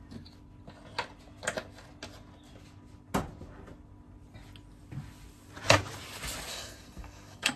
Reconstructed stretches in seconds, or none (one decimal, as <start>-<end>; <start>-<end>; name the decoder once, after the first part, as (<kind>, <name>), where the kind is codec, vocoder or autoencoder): 6.5-7.6 (codec, SNAC)